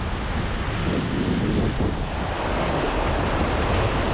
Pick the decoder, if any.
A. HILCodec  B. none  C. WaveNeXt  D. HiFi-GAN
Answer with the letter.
B